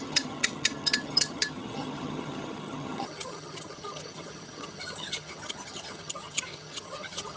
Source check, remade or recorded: remade